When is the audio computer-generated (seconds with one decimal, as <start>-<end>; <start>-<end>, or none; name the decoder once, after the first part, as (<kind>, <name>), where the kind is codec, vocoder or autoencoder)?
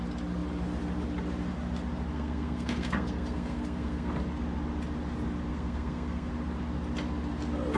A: 2.1-4.1 (codec, SNAC); 5.5-6.3